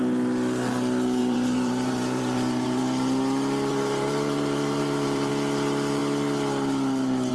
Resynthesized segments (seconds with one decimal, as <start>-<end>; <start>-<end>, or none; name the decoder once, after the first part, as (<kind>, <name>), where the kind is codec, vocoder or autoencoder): 1.2-2.8 (vocoder, BigVGAN v2); 3.7-5.3